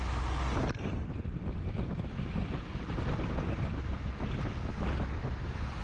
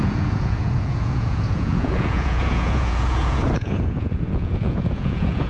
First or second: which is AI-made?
second